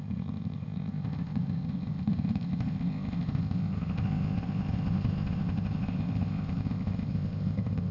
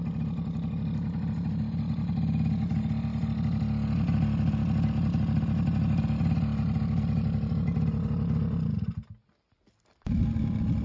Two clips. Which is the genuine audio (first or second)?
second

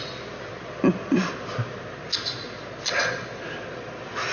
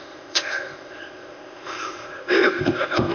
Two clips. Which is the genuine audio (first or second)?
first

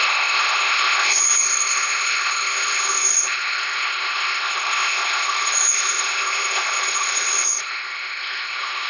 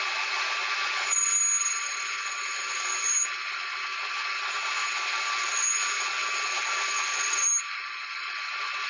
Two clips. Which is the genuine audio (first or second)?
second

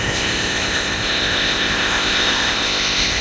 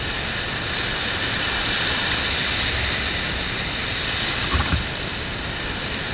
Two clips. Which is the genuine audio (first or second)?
second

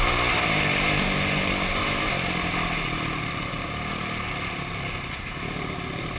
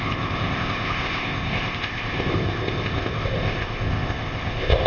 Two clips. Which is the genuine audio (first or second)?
first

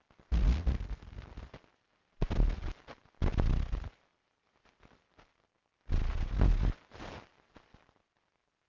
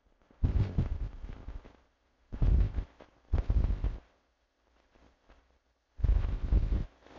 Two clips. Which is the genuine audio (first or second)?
first